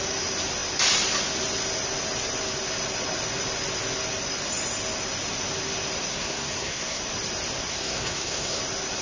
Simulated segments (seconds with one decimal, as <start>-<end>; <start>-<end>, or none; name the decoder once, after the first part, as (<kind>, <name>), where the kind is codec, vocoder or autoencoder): 6.1-7.0 (codec, SNAC); 7.7-8.6